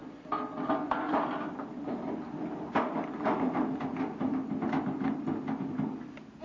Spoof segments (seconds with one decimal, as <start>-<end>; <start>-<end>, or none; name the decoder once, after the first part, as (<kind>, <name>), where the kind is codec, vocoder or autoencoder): none